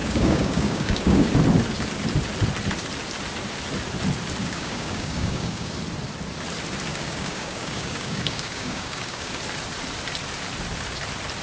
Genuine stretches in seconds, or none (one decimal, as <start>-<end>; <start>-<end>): 1.3-4.4; 5.7-6.9; 9.3-11.4